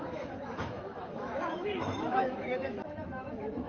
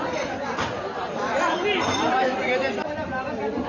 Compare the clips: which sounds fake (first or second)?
first